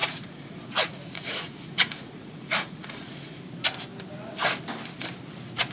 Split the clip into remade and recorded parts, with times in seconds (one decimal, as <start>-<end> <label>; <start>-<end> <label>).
0.0-3.4 remade; 3.4-5.7 recorded